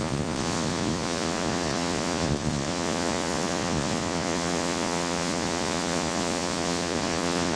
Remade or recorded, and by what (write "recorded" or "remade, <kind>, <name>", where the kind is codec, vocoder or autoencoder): remade, vocoder, Vocos